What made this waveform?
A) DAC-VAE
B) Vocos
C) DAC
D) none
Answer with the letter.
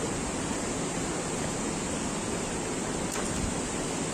D